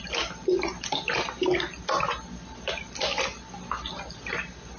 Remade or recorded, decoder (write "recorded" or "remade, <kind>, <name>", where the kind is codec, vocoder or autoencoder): recorded